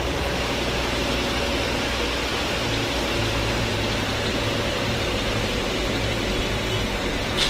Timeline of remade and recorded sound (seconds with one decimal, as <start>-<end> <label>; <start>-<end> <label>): 0.0-2.3 recorded; 2.3-6.4 remade; 6.4-7.5 recorded